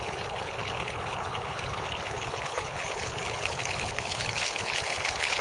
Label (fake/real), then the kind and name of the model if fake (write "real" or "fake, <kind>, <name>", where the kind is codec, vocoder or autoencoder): fake, codec, HILCodec